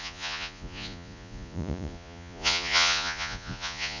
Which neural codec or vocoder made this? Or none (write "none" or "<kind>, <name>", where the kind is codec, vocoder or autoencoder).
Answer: vocoder, Vocos